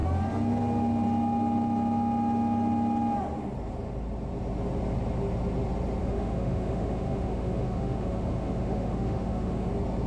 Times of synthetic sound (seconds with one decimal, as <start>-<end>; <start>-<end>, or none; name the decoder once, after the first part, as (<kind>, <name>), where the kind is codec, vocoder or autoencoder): 6.0-9.7 (autoencoder, DAC-VAE)